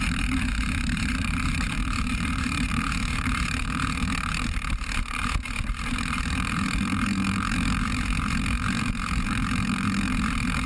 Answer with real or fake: real